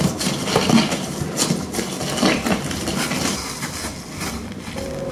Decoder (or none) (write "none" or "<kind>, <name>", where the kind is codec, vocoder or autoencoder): none